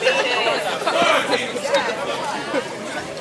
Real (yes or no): no